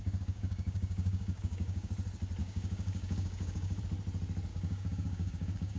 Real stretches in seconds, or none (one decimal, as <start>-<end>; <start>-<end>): 1.9-2.4; 3.8-4.5